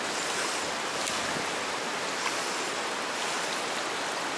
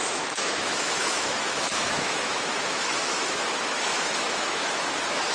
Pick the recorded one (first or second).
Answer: first